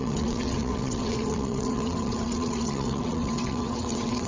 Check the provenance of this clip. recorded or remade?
remade